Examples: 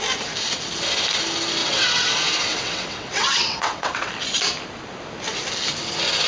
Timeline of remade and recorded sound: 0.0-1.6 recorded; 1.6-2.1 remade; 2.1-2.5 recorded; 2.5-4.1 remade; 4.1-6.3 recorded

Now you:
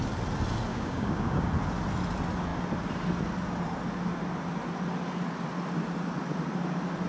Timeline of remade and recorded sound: 0.0-0.7 recorded; 0.7-1.5 remade; 1.5-7.1 recorded

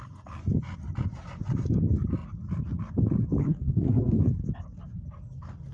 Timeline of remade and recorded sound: 0.0-3.4 recorded; 3.4-4.2 remade; 4.2-5.7 recorded

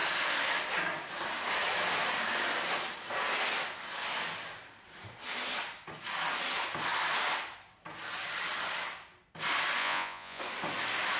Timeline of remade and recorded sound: 0.0-9.8 recorded; 9.8-10.4 remade; 10.4-11.2 recorded

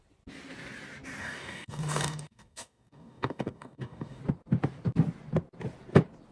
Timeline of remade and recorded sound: 0.0-1.2 recorded; 1.2-4.2 remade; 4.2-6.3 recorded

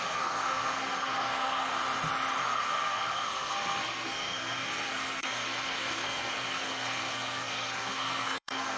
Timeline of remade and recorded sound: 0.0-1.7 remade; 1.7-2.4 recorded; 2.4-8.8 remade

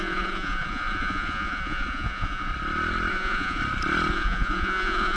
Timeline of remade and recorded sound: 0.0-2.5 remade; 2.5-3.1 recorded; 3.1-3.6 remade; 3.6-4.1 recorded; 4.1-5.2 remade